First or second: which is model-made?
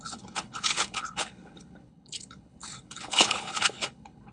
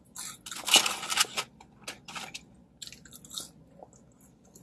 first